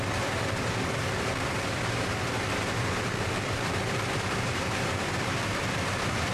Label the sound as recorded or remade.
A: remade